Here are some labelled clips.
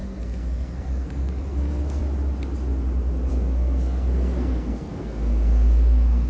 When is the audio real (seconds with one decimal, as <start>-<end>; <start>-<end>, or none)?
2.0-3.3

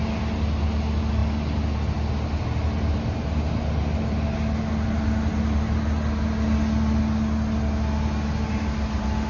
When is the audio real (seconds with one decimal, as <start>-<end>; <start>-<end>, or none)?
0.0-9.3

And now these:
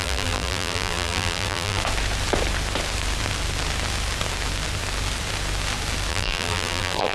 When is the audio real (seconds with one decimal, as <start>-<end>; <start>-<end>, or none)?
1.8-6.1

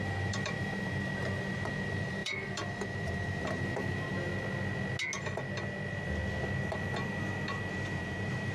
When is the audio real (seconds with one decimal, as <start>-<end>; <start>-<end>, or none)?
4.3-7.7

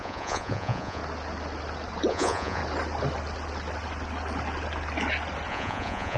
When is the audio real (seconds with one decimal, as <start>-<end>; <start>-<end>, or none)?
1.0-2.1; 2.6-5.5

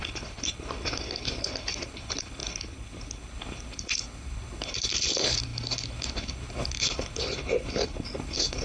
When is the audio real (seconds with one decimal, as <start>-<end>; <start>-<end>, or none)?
none